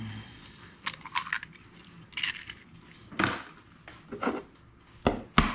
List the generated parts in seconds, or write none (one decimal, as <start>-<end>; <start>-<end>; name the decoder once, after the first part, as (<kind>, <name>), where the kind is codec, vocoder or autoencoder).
none